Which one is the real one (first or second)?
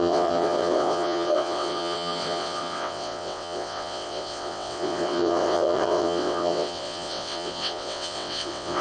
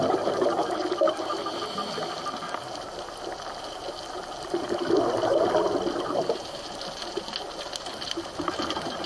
second